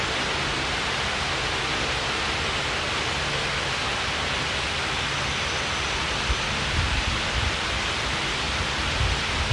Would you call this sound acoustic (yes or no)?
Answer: yes